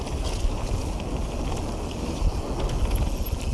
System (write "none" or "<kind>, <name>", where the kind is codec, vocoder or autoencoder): none